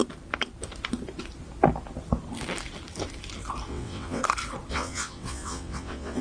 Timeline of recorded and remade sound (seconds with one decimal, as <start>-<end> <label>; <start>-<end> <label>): 0.0-3.7 recorded; 3.7-4.2 remade; 4.2-4.7 recorded; 4.7-6.2 remade